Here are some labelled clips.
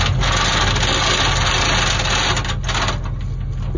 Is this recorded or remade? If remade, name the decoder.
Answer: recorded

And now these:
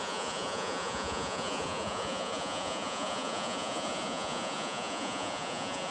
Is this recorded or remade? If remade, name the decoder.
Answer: remade, vocoder, Vocos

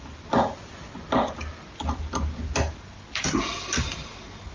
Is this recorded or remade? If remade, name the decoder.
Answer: recorded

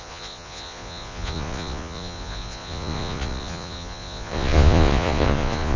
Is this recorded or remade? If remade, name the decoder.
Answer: remade, vocoder, Vocos